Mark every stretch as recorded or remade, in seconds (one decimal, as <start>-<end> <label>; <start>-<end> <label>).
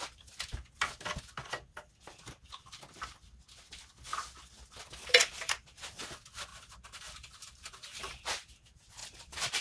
0.0-6.5 recorded; 6.5-8.2 remade; 8.2-9.0 recorded; 9.0-9.6 remade